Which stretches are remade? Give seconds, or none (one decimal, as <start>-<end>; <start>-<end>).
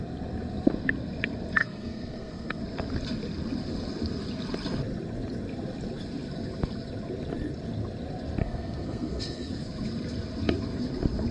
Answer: 1.6-2.6; 8.4-9.5